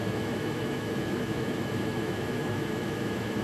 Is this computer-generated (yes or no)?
yes